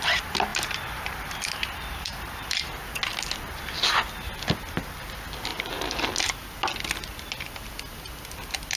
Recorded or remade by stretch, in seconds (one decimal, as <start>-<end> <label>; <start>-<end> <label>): 0.0-0.5 recorded; 0.5-2.5 remade; 2.5-5.5 recorded; 5.5-6.1 remade; 6.1-8.8 recorded